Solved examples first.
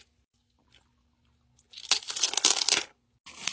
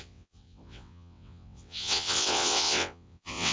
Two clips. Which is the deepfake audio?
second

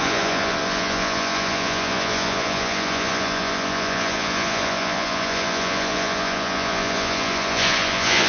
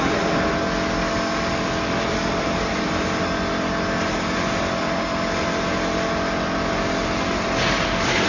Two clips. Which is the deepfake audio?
first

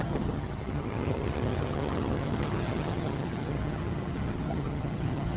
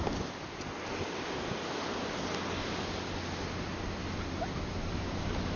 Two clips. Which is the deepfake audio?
first